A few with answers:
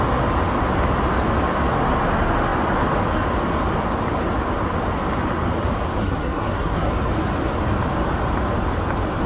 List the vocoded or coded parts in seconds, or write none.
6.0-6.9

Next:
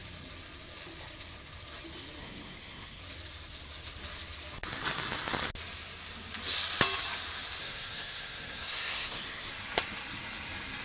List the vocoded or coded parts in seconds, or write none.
2.2-3.0; 7.6-9.5

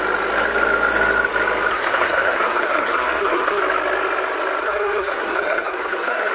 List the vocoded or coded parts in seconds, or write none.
1.7-3.6; 4.6-6.3